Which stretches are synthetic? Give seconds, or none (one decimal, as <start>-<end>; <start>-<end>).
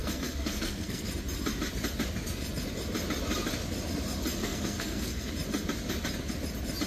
0.0-1.1; 4.4-5.3